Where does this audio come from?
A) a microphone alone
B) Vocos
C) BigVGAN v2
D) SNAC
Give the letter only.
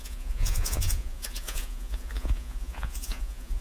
B